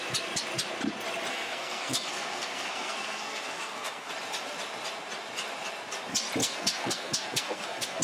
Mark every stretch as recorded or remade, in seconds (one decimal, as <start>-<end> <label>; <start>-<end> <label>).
0.0-1.3 recorded; 1.3-4.1 remade; 4.1-6.4 recorded; 6.4-8.0 remade